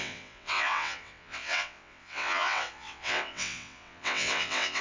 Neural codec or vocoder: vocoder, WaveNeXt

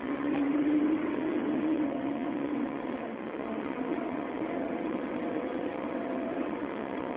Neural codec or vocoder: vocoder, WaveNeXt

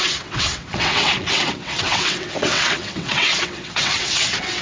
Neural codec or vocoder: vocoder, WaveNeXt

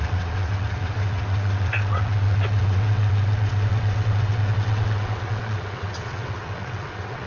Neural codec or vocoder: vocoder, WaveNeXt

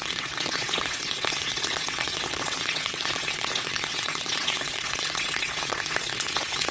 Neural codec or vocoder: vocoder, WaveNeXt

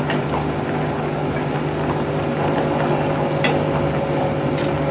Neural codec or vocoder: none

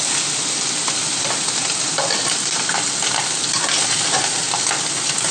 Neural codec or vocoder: none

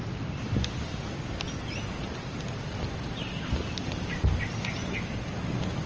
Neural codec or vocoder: none